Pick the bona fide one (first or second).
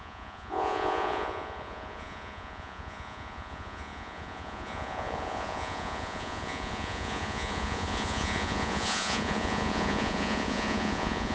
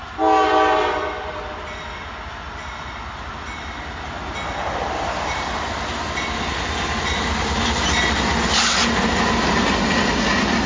second